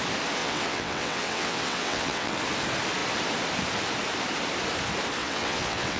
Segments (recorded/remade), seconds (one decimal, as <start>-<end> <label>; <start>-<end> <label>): 0.0-0.4 recorded; 0.4-2.4 remade; 2.4-5.2 recorded; 5.2-6.0 remade